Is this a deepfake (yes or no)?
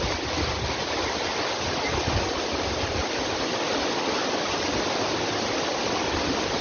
no